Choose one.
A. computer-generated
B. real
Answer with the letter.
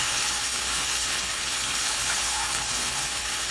A